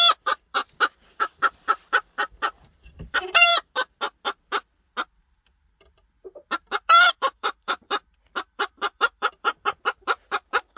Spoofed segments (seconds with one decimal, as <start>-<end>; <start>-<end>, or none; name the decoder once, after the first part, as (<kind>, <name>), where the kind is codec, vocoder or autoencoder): 0.0-0.6 (vocoder, BigVGAN v2); 1.3-3.5; 7.1-10.8